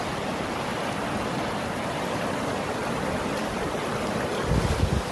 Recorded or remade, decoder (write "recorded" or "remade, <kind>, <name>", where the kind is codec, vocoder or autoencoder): recorded